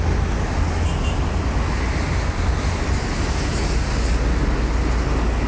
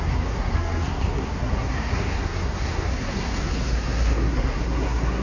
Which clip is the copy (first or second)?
second